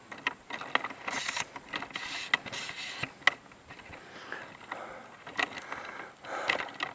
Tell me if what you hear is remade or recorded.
recorded